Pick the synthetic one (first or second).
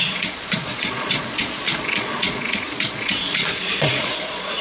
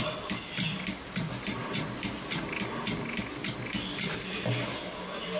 first